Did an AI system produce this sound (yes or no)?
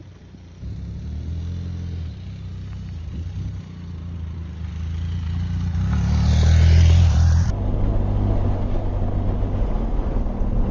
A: no